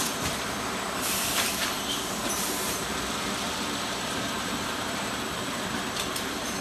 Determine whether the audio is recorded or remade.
remade